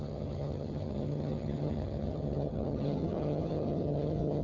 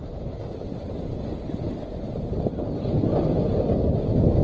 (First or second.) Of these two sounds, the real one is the second